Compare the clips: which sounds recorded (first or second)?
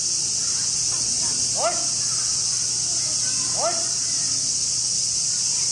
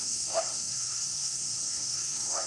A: first